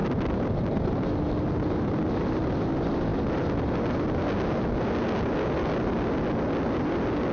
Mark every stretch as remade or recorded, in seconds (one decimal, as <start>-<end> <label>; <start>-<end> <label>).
0.0-7.3 recorded